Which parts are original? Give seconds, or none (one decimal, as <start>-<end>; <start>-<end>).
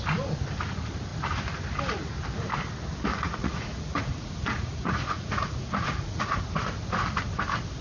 0.0-3.1; 6.4-7.8